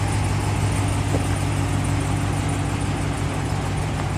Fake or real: real